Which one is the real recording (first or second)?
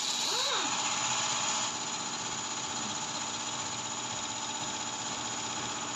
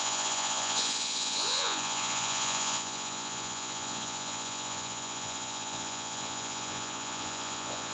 first